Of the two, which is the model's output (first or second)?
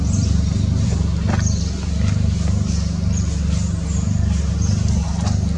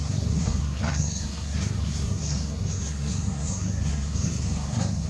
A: second